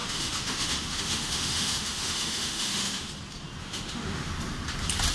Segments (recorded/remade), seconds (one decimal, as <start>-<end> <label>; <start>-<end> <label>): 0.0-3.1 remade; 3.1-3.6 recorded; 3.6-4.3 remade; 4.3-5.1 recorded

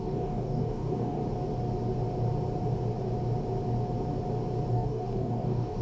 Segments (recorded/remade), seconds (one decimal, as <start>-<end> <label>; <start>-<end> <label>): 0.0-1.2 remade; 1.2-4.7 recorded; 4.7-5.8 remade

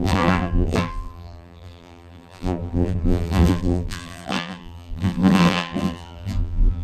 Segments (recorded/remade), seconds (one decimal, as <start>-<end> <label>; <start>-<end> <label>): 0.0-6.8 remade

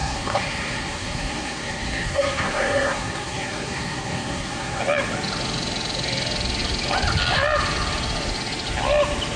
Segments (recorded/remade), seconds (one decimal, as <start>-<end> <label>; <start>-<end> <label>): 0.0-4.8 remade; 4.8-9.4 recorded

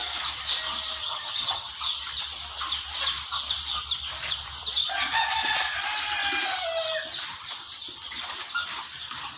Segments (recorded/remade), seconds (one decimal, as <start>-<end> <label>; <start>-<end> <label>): 0.0-1.0 recorded; 1.0-1.7 remade; 1.7-9.4 recorded